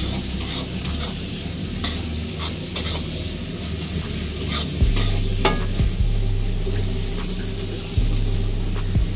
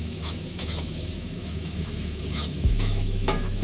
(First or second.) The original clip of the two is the first